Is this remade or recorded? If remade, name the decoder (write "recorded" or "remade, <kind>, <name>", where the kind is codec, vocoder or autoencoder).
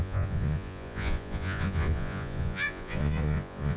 remade, vocoder, Vocos